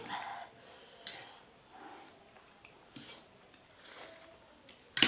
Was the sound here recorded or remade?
recorded